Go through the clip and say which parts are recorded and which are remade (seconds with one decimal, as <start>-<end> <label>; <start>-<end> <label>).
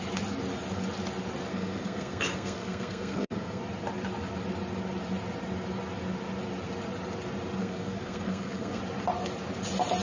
0.0-1.5 recorded; 1.5-3.6 remade; 3.6-7.6 recorded; 7.6-8.8 remade; 8.8-10.0 recorded